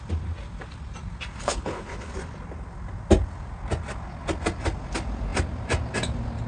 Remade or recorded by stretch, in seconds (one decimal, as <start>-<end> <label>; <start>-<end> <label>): 0.0-1.4 recorded; 1.4-2.1 remade; 2.1-6.5 recorded

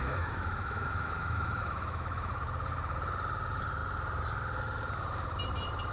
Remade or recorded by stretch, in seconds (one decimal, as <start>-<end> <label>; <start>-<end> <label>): 0.0-2.3 remade; 2.3-5.9 recorded